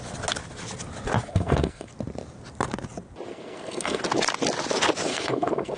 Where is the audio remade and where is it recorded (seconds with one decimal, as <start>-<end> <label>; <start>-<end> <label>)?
0.0-1.3 recorded; 1.3-1.9 remade; 1.9-3.3 recorded; 3.3-4.0 remade; 4.0-5.1 recorded; 5.1-5.8 remade